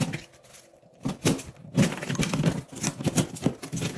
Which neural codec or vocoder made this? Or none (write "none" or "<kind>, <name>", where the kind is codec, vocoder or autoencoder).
none